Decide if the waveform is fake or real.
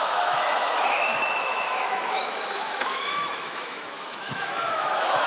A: fake